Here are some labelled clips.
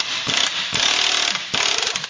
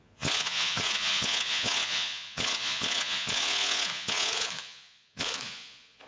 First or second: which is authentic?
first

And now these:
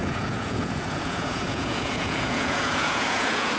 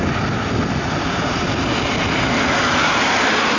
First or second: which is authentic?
second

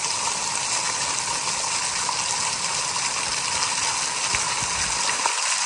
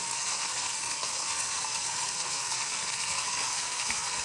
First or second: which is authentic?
first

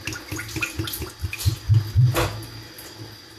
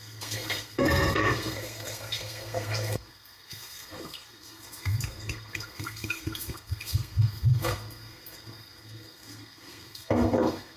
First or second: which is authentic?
first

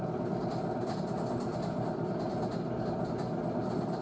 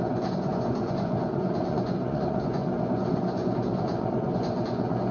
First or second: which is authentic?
first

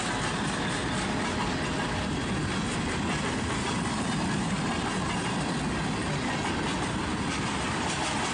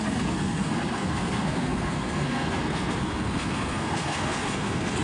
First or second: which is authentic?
first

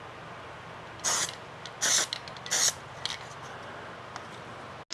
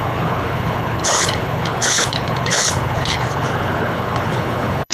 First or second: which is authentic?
first